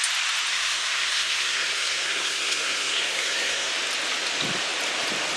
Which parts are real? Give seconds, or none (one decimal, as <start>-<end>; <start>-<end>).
0.0-0.5; 3.7-5.4